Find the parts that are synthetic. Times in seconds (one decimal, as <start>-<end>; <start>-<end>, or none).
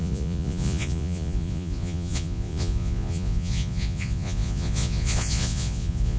0.0-6.2